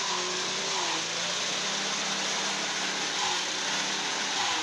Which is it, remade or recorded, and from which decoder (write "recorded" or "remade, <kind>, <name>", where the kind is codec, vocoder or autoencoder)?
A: recorded